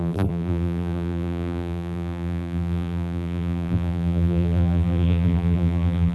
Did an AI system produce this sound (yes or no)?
yes